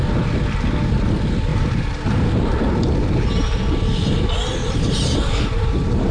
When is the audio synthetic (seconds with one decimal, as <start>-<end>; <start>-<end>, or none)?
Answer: 1.5-2.2; 4.6-6.1